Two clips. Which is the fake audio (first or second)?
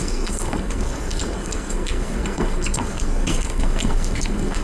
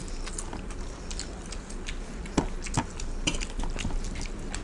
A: first